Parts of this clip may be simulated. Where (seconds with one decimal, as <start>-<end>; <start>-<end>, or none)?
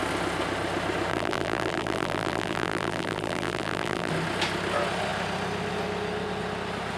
1.1-4.1